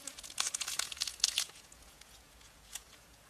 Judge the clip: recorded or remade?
remade